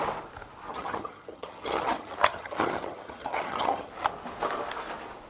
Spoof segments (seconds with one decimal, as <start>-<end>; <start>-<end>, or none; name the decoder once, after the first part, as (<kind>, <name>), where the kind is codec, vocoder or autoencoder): 0.7-3.9 (vocoder, HiFi-GAN)